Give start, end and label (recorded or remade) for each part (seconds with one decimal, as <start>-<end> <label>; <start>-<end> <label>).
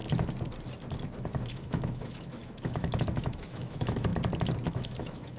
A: 0.0-1.2 recorded; 1.2-4.1 remade; 4.1-4.7 recorded; 4.7-5.4 remade